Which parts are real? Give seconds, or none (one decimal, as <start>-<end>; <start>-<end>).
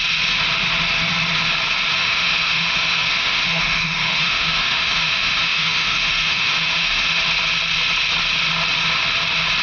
0.0-2.0; 7.2-9.6